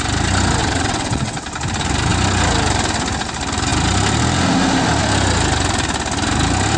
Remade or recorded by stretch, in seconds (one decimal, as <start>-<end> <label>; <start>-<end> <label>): 0.0-0.6 recorded; 0.6-1.4 remade; 1.4-6.8 recorded